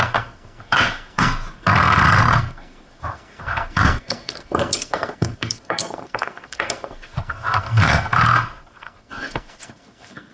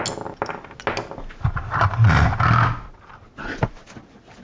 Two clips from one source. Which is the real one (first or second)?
second